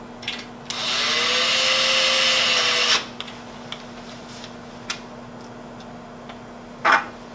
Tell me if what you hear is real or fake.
real